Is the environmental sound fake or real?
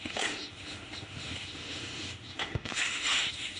fake